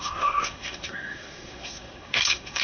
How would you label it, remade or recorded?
remade